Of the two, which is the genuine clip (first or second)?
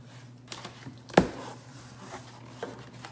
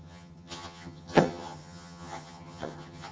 first